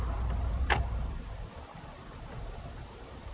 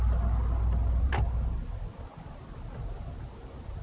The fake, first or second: first